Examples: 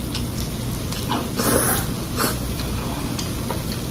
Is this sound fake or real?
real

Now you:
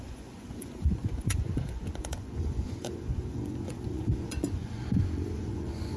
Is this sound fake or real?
fake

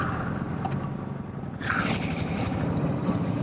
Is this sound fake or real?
real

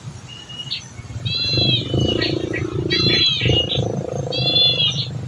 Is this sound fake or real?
real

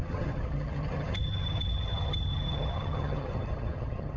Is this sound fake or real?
fake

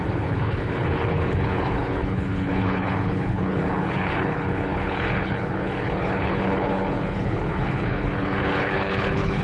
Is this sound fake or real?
fake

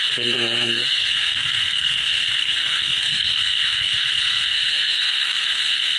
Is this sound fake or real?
fake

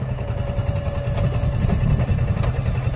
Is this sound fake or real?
real